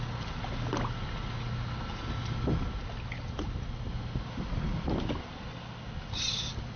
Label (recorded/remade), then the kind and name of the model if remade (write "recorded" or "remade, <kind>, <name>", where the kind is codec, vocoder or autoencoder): recorded